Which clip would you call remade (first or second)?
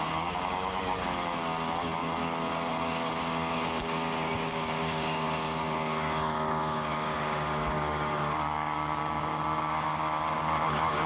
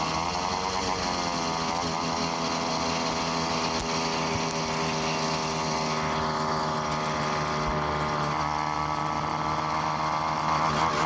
first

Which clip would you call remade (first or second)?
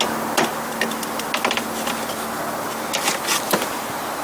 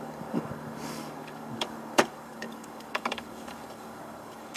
second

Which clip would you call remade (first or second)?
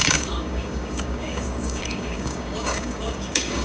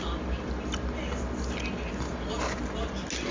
first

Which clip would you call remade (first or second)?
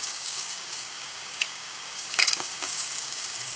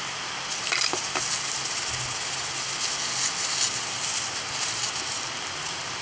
first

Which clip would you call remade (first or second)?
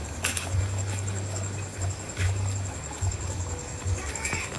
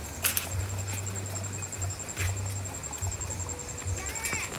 first